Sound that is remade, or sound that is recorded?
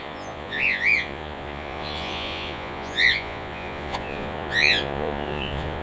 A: remade